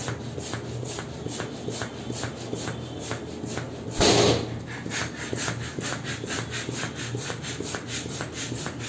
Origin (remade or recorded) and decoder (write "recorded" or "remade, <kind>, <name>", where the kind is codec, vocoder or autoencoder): recorded